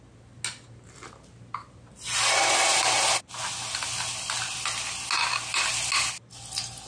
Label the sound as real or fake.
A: real